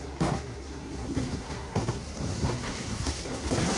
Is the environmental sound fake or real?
fake